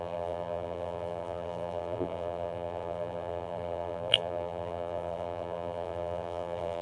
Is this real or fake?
fake